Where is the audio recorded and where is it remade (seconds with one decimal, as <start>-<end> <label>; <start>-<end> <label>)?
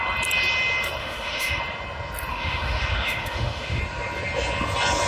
0.0-1.0 recorded; 1.0-1.6 remade; 1.6-2.3 recorded; 2.3-3.8 remade; 3.8-5.1 recorded